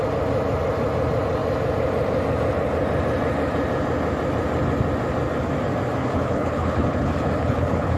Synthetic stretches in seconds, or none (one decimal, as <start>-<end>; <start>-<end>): 6.0-8.0